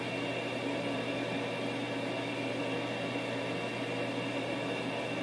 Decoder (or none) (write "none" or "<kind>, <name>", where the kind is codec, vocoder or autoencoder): none